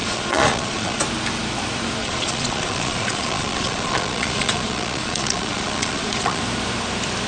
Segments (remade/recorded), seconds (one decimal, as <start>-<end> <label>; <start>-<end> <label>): 0.0-1.0 remade; 1.0-2.0 recorded; 2.0-6.4 remade; 6.4-7.3 recorded